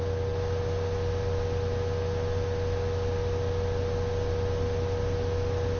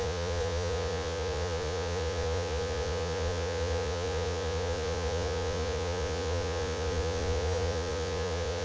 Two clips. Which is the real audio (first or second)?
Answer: first